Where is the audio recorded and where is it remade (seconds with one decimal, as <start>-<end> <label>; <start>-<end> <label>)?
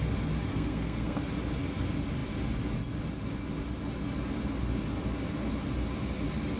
0.0-0.5 recorded; 0.5-1.2 remade; 1.2-6.6 recorded